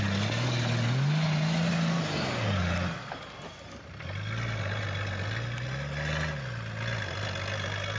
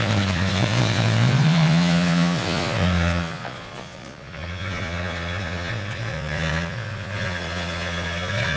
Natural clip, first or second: first